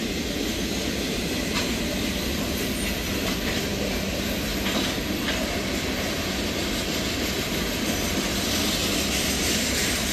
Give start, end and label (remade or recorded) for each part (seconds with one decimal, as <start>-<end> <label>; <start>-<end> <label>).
0.0-10.1 recorded